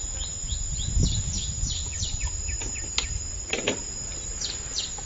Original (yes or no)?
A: yes